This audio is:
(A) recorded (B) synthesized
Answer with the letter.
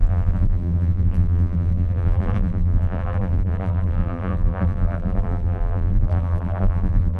B